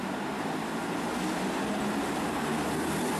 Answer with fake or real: real